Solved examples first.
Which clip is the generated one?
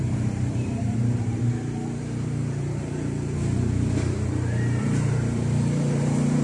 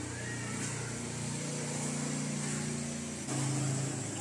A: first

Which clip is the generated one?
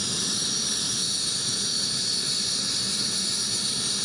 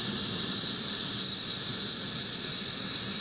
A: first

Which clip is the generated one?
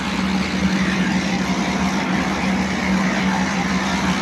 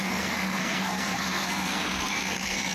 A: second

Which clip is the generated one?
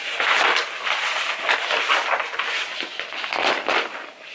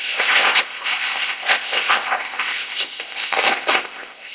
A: second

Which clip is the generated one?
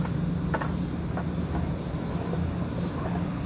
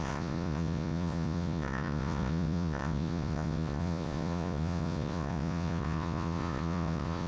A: second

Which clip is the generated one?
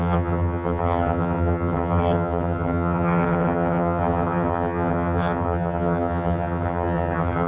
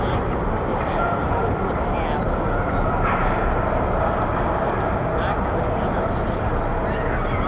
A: first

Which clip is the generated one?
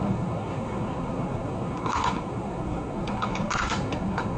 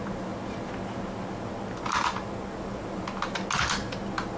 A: first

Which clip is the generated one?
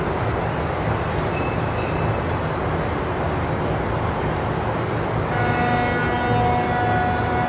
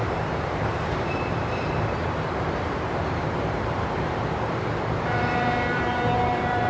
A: second